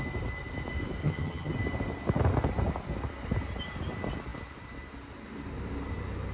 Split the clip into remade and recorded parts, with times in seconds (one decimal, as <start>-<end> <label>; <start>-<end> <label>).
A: 0.0-1.0 recorded; 1.0-1.5 remade; 1.5-6.3 recorded